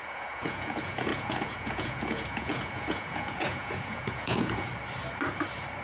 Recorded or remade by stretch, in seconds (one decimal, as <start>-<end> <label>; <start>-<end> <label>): 0.0-4.7 remade; 4.7-5.8 recorded